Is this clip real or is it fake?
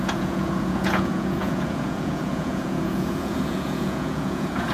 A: fake